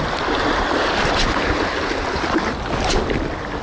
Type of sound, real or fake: real